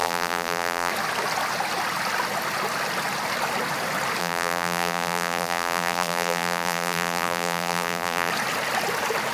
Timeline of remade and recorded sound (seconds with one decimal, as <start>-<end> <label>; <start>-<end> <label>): 0.0-0.9 remade; 0.9-4.2 recorded; 4.2-8.3 remade; 8.3-9.3 recorded